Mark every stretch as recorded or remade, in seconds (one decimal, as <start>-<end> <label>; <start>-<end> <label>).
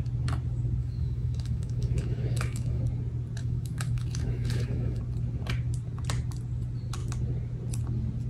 0.0-0.8 recorded; 0.8-2.8 remade; 2.8-3.4 recorded; 3.4-5.0 remade; 5.0-8.3 recorded